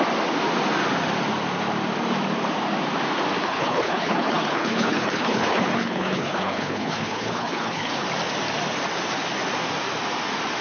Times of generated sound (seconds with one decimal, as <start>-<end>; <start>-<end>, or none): 3.4-7.9